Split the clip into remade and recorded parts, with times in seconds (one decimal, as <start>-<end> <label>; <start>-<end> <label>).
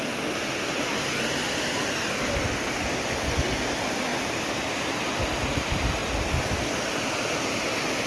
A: 0.0-4.1 recorded; 4.1-5.2 remade; 5.2-8.1 recorded